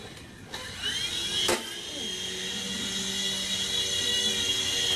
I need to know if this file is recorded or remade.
recorded